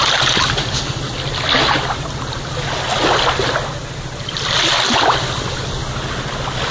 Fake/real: real